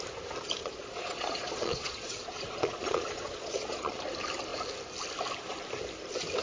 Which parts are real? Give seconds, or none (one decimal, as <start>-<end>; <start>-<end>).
0.0-0.6; 4.0-6.4